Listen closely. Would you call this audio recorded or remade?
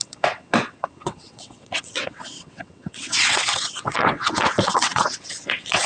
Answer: remade